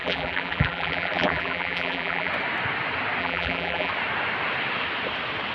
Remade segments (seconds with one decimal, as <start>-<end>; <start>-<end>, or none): 0.0-2.3; 3.2-3.9

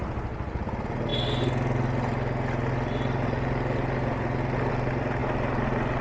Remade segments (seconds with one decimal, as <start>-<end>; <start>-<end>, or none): none

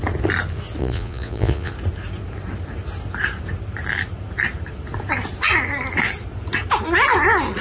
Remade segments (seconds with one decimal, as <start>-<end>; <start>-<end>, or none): 0.8-1.7